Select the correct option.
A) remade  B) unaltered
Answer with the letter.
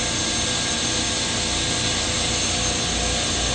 B